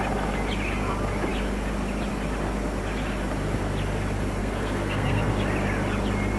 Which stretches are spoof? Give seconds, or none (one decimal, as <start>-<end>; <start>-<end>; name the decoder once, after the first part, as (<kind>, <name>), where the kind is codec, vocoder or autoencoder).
4.4-5.3 (codec, SNAC)